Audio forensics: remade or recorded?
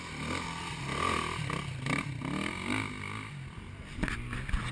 recorded